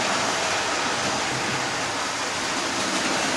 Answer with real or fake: real